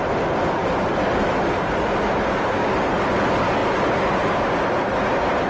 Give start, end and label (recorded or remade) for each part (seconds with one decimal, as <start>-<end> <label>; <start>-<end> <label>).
0.0-5.5 recorded